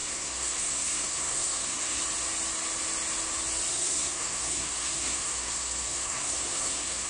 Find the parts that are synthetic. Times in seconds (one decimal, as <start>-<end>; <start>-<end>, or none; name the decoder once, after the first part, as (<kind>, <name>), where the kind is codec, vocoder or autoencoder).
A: 0.0-2.0 (codec, SNAC); 3.7-7.1